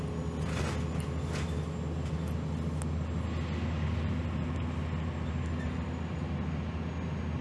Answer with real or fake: real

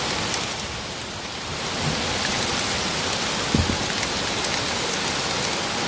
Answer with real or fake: real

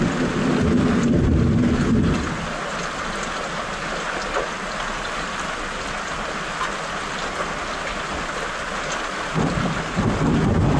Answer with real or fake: real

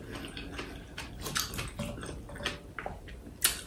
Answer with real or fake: real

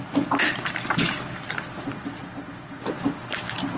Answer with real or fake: real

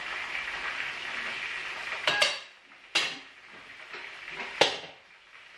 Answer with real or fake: real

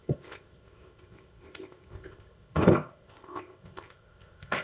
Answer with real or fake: fake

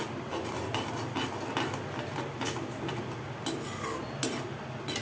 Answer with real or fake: real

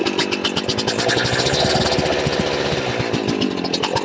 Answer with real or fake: real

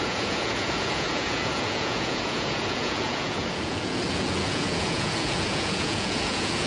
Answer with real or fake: fake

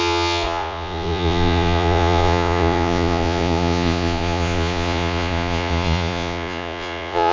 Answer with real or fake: fake